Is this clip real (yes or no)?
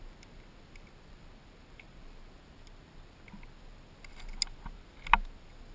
yes